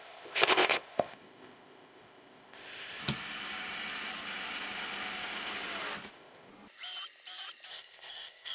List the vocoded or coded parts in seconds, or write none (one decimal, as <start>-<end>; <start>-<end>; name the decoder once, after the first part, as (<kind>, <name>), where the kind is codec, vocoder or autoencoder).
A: 0.0-3.0 (codec, ZipCodec); 6.1-6.5; 7.7-8.5